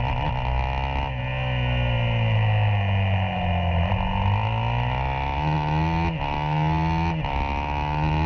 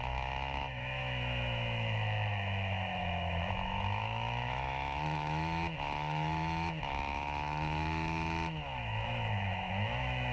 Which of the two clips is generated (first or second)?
second